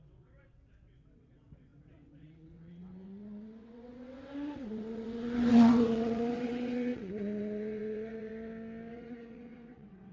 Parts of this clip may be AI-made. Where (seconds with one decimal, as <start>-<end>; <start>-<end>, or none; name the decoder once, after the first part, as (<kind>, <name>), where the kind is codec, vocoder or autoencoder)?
0.0-8.3 (vocoder, WaveNeXt); 8.9-10.1